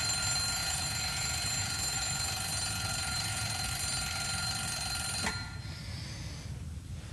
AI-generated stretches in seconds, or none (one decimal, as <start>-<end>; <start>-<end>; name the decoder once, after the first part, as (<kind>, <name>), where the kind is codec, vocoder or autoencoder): 0.6-3.7 (vocoder, Vocos)